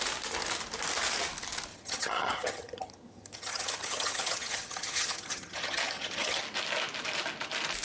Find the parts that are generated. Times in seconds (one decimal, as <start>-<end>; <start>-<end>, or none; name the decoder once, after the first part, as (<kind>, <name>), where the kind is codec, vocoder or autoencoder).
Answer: 1.7-6.4 (vocoder, HiFi-GAN)